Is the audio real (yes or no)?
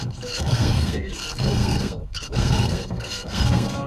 no